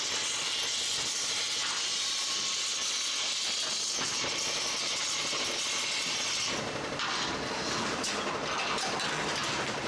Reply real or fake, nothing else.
real